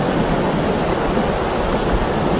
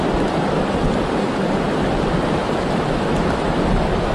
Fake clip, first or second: second